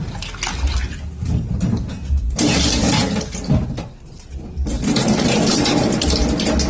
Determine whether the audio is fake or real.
real